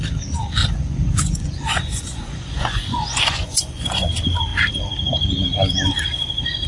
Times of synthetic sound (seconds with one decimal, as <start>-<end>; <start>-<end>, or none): 0.6-4.1